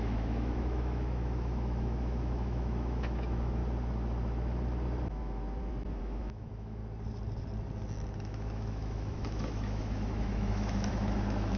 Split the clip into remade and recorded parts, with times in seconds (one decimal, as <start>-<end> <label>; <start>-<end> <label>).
0.0-3.6 remade; 3.6-6.0 recorded; 6.0-6.8 remade; 6.8-8.2 recorded; 8.2-11.6 remade